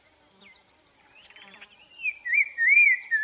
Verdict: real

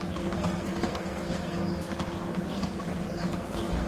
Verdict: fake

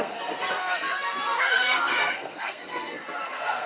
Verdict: fake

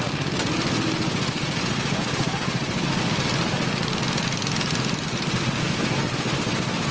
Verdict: real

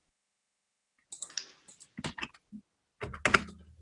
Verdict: real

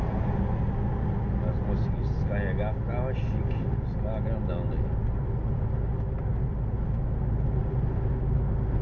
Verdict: real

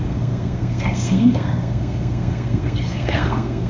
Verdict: fake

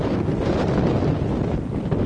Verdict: real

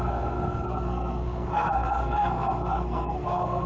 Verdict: fake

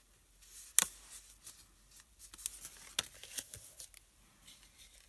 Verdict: real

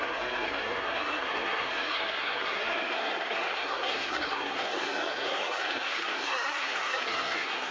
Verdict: fake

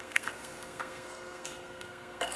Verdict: fake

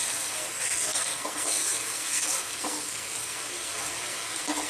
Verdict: fake